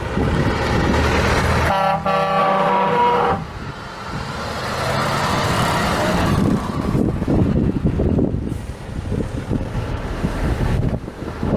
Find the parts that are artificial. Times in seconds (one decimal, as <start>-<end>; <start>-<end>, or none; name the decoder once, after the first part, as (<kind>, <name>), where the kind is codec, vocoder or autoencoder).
2.4-3.7 (autoencoder, DAC-VAE); 9.7-11.6